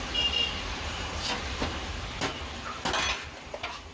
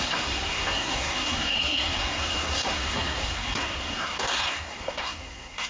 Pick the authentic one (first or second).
first